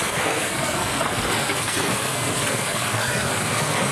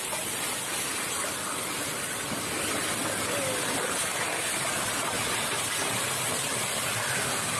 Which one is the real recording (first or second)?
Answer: second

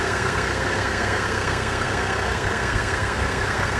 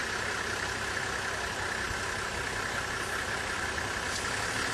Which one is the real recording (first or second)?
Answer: second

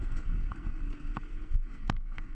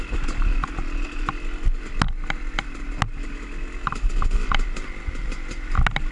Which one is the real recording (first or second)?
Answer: second